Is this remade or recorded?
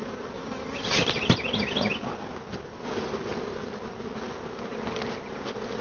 recorded